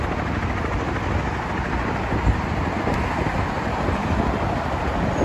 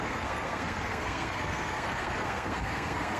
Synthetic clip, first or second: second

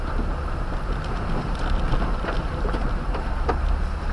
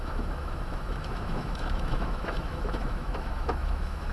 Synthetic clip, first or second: second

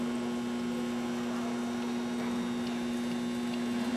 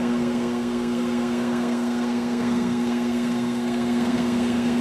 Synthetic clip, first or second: second